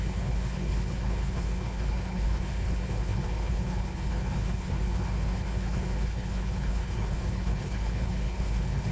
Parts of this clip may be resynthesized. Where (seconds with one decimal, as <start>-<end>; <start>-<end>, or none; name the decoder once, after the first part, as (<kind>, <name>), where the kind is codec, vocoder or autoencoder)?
0.0-8.9 (codec, HILCodec)